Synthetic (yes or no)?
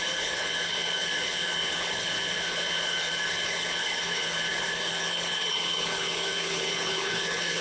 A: yes